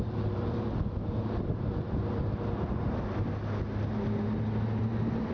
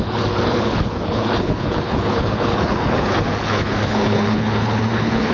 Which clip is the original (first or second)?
first